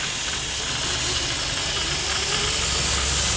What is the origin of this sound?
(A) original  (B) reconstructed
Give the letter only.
A